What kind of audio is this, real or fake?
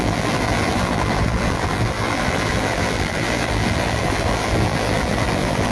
fake